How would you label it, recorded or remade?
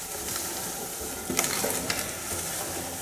recorded